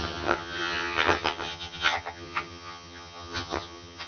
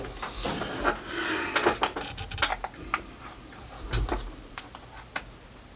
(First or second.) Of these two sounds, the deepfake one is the first